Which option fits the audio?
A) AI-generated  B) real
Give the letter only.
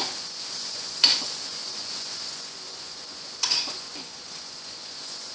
A